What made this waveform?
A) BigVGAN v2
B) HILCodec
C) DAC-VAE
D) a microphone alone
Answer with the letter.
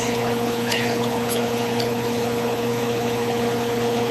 B